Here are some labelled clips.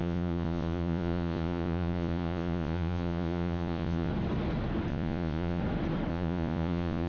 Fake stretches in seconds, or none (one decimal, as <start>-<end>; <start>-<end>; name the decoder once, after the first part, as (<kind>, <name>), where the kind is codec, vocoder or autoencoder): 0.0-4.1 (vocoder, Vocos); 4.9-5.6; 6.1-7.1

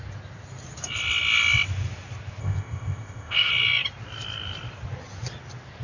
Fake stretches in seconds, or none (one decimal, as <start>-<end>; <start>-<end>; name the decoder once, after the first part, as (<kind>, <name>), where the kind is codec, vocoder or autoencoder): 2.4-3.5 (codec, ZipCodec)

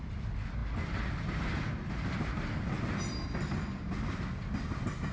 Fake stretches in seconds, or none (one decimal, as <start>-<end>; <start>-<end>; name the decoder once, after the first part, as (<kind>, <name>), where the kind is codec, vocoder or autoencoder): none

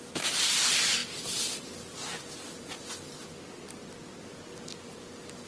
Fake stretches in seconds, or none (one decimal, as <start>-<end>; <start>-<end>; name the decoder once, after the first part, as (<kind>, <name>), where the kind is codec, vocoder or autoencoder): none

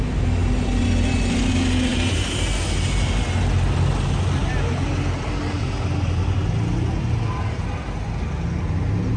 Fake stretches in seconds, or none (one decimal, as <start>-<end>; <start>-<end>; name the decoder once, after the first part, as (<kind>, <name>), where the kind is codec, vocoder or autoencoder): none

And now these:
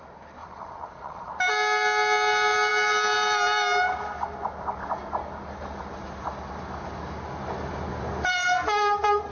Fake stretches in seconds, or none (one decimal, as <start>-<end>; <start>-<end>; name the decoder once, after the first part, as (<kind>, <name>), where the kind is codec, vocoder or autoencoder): 0.4-1.3 (vocoder, Vocos)

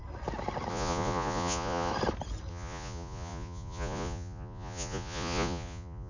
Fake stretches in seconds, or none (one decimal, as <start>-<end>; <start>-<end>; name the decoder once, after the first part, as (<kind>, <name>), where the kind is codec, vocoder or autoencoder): 0.7-1.9 (vocoder, Vocos); 2.5-6.1